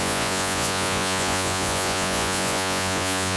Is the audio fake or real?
fake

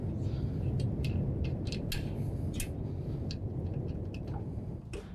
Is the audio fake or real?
real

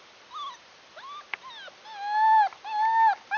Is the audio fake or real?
real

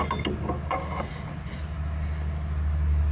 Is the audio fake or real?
real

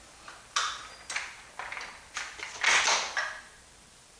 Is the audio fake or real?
real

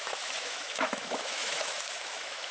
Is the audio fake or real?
fake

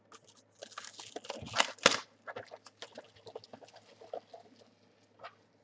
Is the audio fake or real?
real